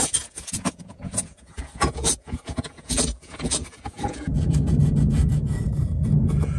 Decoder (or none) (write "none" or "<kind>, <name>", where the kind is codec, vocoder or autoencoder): vocoder, Vocos